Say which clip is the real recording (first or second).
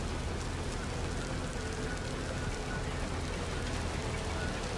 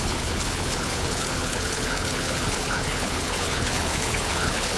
first